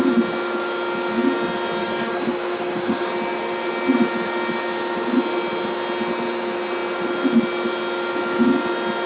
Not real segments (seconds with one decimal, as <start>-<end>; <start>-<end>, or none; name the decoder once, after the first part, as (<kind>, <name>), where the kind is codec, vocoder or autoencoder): 1.8-3.1 (codec, DAC)